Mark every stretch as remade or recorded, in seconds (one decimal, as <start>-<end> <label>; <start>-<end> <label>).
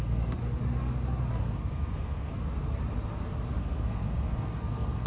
0.0-0.4 remade; 0.4-1.4 recorded; 1.4-2.3 remade; 2.3-3.6 recorded; 3.6-5.1 remade